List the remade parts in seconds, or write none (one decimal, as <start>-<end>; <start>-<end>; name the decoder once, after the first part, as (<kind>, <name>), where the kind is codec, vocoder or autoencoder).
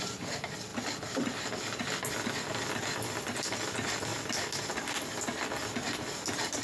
none